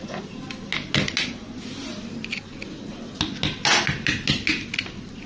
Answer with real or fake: real